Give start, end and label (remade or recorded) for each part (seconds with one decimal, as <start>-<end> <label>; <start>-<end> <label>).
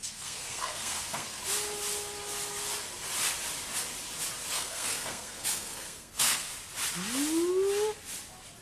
0.0-1.4 remade; 1.4-4.5 recorded; 4.5-6.5 remade; 6.5-8.6 recorded